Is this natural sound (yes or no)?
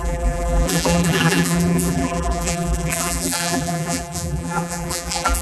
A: no